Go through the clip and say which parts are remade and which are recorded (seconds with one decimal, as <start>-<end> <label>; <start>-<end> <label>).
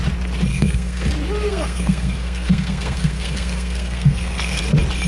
0.0-0.5 recorded; 0.5-1.1 remade; 1.1-1.5 recorded; 1.5-4.6 remade; 4.6-5.1 recorded